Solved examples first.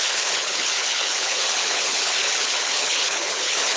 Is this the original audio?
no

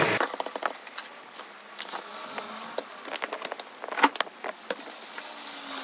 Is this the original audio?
yes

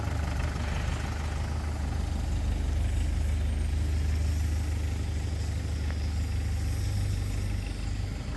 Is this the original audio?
yes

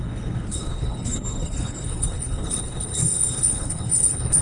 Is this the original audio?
no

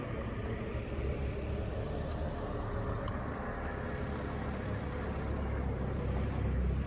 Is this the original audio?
yes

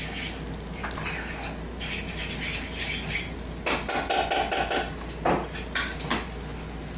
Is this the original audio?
yes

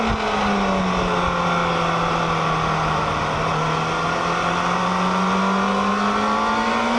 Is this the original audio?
yes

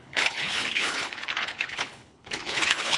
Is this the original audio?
no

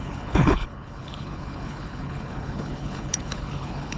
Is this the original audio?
no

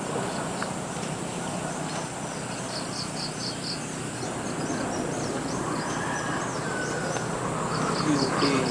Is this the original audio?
yes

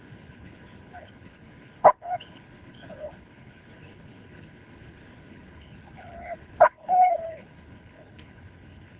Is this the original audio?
no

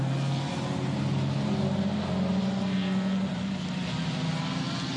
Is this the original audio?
yes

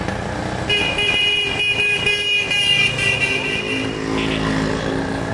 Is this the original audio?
yes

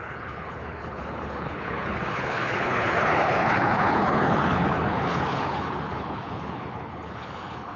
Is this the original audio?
no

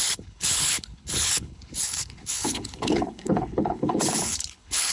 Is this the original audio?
no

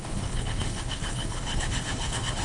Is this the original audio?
no